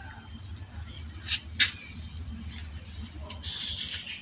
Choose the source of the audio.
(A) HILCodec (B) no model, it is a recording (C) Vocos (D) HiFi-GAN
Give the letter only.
B